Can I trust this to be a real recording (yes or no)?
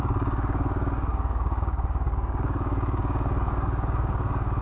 no